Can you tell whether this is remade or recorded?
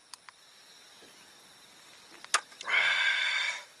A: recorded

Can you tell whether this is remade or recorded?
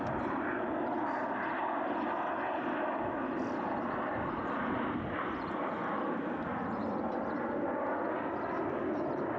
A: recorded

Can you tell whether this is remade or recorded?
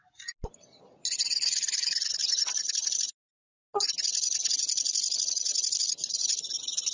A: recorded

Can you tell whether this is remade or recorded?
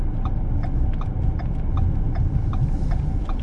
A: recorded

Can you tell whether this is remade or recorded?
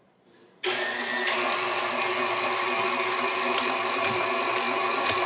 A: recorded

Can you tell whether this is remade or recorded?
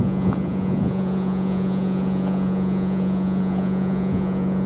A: remade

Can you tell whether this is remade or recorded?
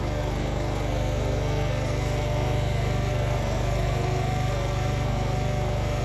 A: remade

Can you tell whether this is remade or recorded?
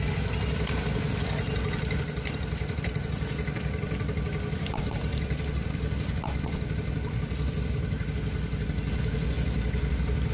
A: recorded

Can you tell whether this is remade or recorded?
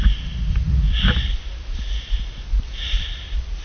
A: recorded